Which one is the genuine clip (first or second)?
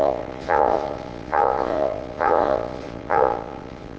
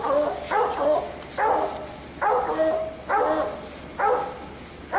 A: second